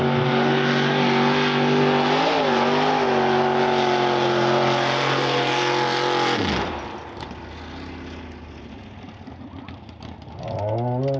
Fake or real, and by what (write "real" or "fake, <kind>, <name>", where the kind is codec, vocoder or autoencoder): real